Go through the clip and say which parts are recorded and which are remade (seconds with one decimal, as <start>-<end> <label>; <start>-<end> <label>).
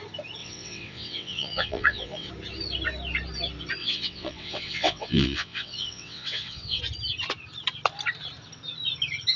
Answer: 0.0-0.4 recorded; 0.4-2.3 remade; 2.3-3.8 recorded; 3.8-6.8 remade; 6.8-9.4 recorded